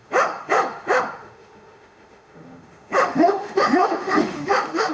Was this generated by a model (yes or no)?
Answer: yes